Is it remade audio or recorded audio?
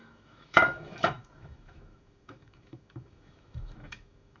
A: remade